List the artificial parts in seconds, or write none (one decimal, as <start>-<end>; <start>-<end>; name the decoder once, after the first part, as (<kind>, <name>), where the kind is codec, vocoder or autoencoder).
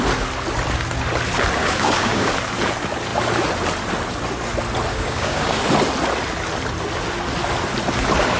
1.6-2.3 (codec, DAC); 4.9-5.6